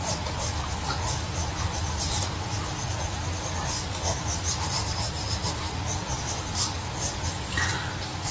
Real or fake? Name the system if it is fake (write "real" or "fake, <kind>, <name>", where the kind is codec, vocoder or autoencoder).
real